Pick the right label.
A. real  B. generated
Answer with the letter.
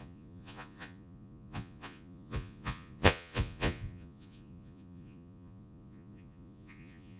B